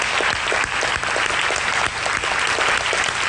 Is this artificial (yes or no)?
no